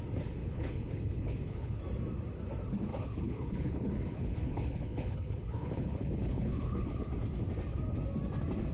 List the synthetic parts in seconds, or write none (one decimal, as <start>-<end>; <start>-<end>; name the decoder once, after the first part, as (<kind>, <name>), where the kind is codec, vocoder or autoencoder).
0.4-1.8 (codec, HILCodec); 2.9-7.1